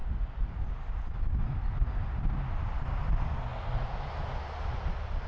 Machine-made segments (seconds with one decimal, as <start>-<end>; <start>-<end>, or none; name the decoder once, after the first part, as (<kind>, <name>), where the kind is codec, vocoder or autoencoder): none